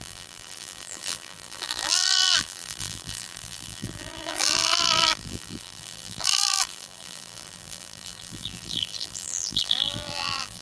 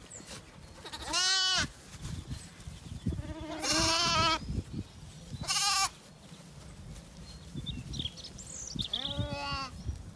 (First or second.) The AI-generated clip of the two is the first